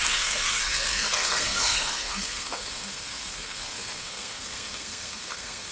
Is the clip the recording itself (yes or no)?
no